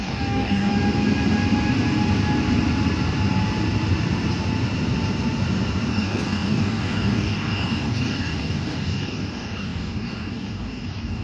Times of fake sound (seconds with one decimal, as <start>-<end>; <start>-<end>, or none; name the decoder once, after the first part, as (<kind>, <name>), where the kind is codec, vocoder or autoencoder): 0.0-0.7 (codec, DAC); 5.9-11.2